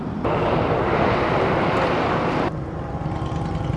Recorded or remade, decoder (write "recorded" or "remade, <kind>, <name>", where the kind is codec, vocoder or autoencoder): recorded